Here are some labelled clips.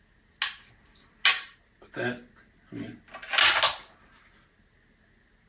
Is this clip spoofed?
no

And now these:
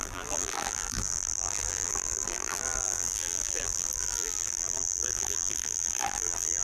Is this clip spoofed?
yes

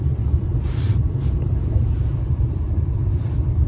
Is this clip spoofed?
yes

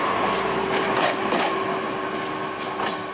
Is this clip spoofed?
no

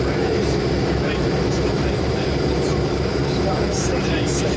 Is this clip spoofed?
yes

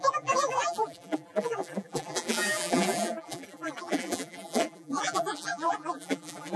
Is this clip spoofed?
yes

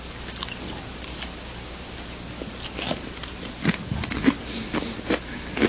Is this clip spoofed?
no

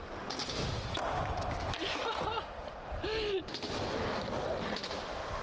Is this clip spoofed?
no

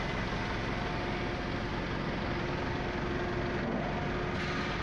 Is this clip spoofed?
no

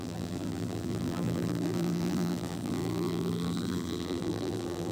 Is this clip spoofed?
yes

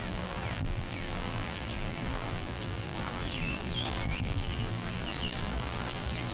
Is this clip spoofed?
yes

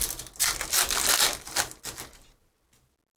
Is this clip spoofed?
no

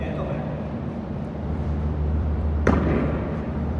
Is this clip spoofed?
yes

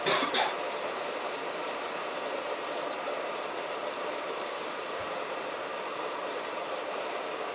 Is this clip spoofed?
yes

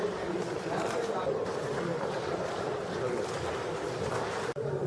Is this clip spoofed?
yes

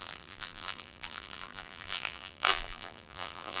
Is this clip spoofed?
yes